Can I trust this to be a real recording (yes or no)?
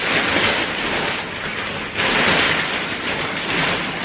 yes